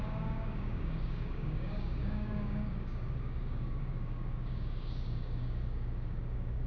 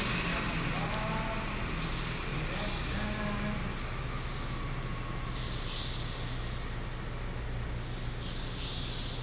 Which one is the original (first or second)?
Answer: second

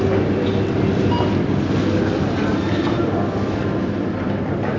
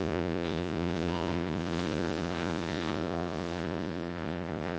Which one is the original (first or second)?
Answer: first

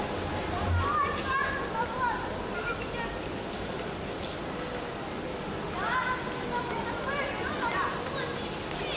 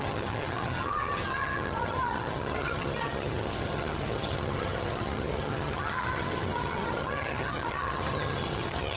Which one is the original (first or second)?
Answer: first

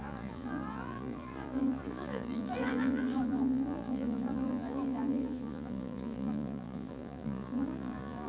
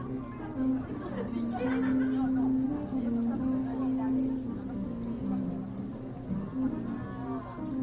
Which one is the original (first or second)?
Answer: second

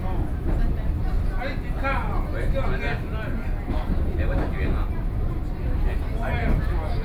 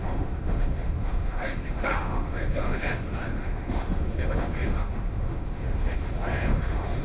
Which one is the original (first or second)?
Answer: first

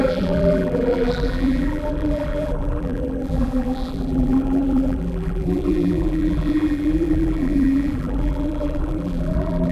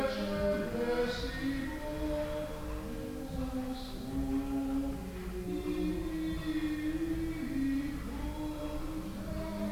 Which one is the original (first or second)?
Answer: second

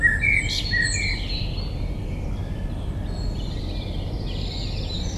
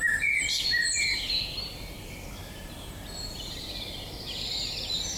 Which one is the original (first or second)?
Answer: first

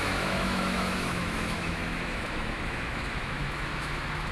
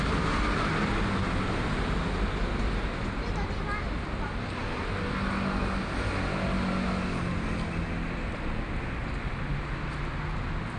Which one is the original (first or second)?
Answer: second